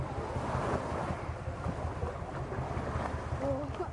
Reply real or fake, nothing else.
real